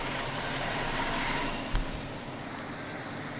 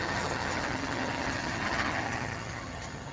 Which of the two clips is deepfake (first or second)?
second